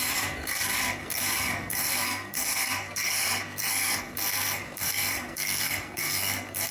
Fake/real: fake